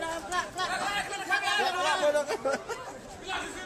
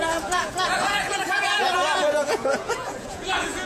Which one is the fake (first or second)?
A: second